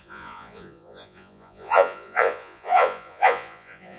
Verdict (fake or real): fake